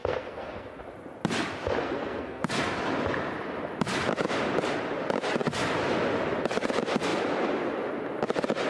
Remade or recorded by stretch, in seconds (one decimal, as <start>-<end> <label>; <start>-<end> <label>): 0.0-0.8 remade; 0.8-1.8 recorded; 1.8-2.5 remade; 2.5-8.7 recorded